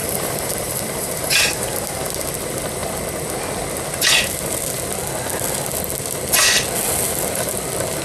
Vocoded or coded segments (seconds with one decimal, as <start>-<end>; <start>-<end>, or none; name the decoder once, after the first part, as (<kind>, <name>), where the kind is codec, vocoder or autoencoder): 0.0-1.9 (vocoder, BigVGAN v2)